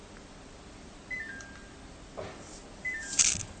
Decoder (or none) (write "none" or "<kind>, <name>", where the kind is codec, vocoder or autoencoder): none